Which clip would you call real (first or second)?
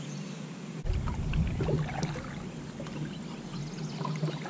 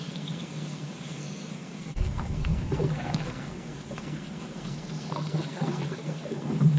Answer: first